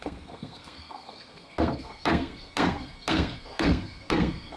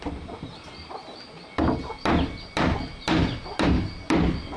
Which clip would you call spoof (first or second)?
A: first